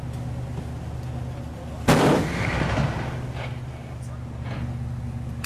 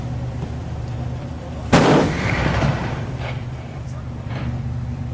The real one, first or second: first